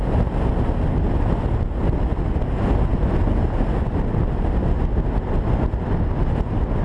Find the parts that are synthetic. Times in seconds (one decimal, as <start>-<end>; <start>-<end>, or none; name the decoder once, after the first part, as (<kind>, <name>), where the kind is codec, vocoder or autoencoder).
none